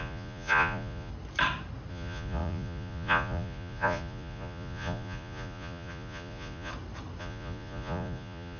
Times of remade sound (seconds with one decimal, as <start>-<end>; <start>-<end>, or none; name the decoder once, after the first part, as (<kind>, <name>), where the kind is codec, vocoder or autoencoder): 0.0-1.1 (vocoder, Vocos); 1.9-6.7; 7.2-8.6